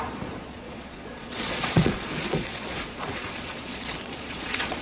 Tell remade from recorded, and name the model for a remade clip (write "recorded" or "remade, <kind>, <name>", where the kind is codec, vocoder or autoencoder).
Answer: remade, vocoder, Vocos